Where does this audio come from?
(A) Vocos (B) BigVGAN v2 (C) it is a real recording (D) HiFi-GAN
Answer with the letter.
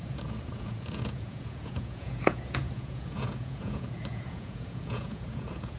A